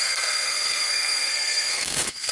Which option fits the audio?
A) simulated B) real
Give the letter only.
A